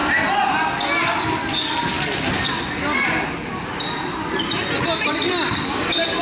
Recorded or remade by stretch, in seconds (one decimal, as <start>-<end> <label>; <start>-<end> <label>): 0.0-6.2 recorded